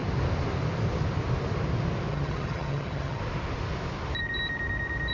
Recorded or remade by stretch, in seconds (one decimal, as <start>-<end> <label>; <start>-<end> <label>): 0.0-2.1 recorded; 2.1-3.2 remade; 3.2-5.1 recorded